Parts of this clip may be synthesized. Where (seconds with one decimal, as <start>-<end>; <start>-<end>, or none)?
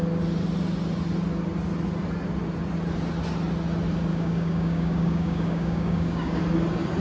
4.1-6.4